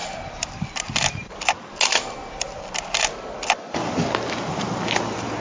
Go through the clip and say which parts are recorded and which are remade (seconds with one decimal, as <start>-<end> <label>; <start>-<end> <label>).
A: 0.0-5.4 recorded